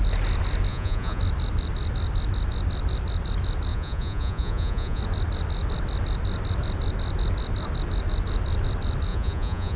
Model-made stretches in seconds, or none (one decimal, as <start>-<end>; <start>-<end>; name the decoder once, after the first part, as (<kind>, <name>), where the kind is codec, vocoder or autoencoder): 0.7-1.2 (vocoder, Vocos); 3.7-5.0; 9.1-9.8